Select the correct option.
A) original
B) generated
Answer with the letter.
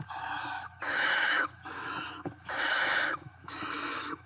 B